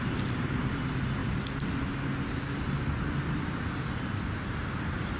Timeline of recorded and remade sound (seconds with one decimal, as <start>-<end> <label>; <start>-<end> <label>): 0.0-5.2 recorded